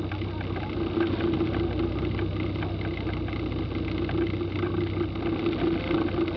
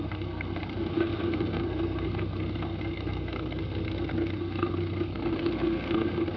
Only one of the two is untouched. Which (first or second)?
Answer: first